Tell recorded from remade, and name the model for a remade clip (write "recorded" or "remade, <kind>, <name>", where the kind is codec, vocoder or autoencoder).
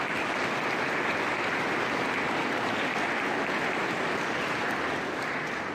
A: recorded